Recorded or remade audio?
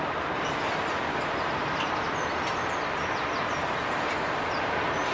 recorded